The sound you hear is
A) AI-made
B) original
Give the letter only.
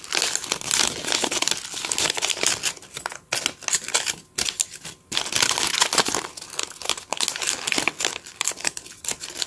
B